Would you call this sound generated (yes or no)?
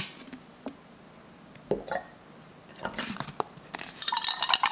no